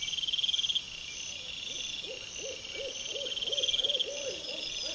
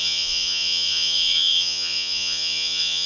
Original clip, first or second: first